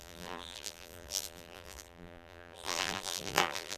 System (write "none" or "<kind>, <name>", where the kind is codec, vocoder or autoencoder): vocoder, BigVGAN v2